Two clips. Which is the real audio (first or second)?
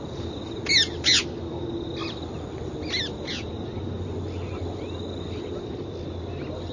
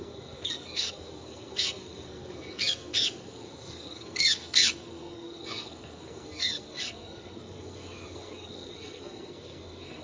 first